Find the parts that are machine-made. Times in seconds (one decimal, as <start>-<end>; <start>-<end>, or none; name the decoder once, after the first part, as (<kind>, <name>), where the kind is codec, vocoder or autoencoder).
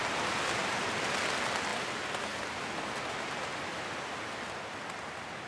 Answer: none